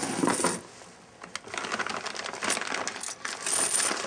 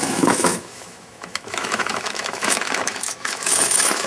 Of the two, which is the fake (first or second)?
second